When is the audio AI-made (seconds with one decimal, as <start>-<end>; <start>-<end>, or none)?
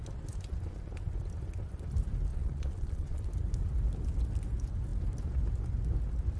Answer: 2.3-3.2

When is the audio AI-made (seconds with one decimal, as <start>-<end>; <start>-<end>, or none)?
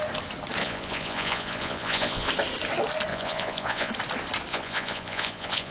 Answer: 0.6-2.3; 3.1-3.9; 4.5-5.7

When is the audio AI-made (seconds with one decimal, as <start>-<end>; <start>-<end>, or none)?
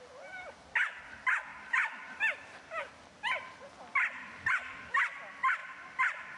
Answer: 1.5-4.8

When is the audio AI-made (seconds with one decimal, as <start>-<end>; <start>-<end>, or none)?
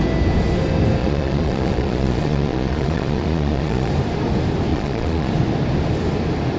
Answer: 1.0-3.9; 4.7-5.3